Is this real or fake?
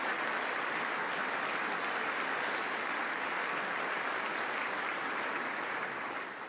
real